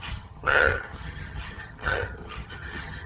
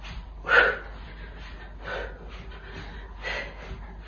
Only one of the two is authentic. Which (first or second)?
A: second